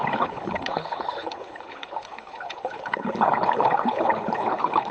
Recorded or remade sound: remade